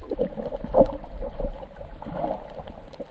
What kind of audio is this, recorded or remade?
recorded